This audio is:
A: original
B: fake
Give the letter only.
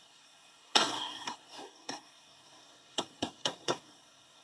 B